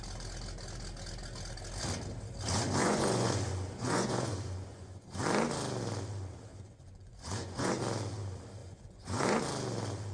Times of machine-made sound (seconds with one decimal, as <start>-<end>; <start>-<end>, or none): 2.8-5.2; 6.5-7.7; 8.6-9.4